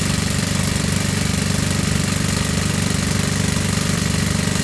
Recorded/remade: recorded